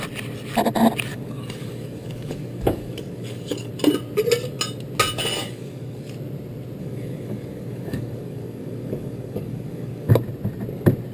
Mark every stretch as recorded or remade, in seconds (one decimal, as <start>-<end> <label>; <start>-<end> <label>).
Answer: 0.0-1.1 recorded; 1.1-3.7 remade; 3.7-5.3 recorded; 5.3-6.1 remade; 6.1-6.8 recorded; 6.8-10.1 remade; 10.1-11.1 recorded